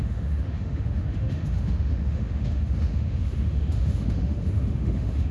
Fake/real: fake